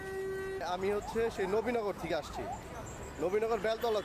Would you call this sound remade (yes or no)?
no